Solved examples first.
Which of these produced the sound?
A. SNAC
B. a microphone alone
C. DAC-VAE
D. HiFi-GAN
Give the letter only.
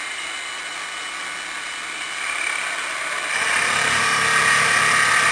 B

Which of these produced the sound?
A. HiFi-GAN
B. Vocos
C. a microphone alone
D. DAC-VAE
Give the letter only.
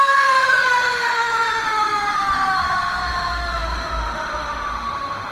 D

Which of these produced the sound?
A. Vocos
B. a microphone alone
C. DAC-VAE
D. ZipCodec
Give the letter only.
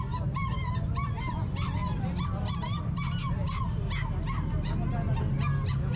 B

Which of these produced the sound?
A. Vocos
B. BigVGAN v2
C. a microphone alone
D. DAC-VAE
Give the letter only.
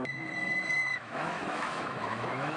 D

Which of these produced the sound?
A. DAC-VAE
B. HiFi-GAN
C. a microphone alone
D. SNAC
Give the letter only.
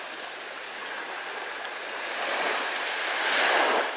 C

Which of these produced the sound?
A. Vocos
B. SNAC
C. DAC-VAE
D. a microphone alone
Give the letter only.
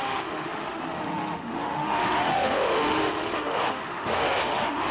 C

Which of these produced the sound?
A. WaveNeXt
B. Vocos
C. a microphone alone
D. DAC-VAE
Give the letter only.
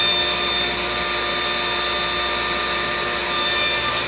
C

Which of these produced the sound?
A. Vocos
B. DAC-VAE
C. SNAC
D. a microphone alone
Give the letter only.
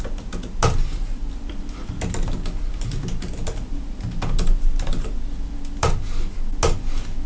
D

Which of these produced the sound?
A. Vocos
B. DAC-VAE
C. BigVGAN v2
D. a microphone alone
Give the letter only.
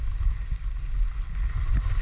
D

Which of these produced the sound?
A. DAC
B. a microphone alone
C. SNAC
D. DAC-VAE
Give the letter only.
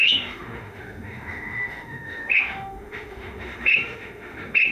D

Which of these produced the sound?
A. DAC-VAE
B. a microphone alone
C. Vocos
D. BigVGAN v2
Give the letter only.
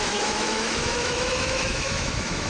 A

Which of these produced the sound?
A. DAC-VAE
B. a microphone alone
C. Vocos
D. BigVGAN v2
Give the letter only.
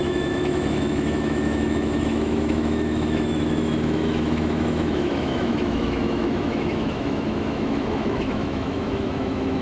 A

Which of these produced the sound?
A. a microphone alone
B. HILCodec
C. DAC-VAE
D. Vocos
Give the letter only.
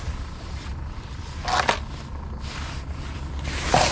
A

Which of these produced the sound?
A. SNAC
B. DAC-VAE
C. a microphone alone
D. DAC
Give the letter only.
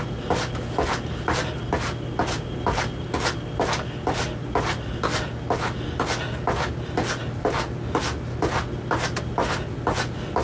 C